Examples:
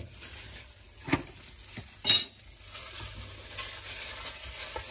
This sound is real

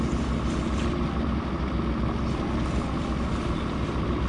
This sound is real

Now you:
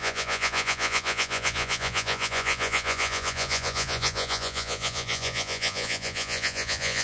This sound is fake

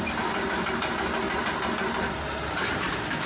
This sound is real